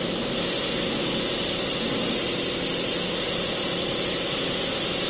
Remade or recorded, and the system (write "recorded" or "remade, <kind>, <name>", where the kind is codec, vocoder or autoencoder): recorded